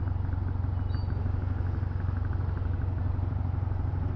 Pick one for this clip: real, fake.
real